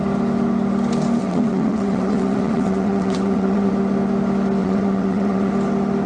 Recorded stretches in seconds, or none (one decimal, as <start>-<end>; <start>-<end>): 0.0-1.2; 3.7-4.6; 5.5-6.1